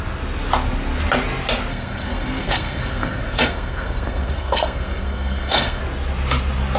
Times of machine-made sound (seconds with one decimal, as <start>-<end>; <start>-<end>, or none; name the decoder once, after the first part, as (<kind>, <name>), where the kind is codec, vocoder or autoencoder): 1.7-5.8 (codec, SNAC)